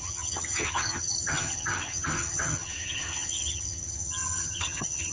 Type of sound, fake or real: fake